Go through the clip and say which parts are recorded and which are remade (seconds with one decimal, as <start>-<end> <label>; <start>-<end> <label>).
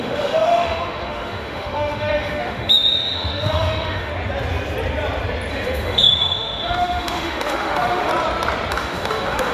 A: 0.0-4.1 remade; 4.1-5.5 recorded; 5.5-8.1 remade; 8.1-8.7 recorded; 8.7-9.5 remade